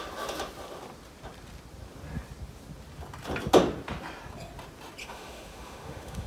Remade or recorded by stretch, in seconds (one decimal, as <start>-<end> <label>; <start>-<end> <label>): 0.0-5.0 recorded; 5.0-6.3 remade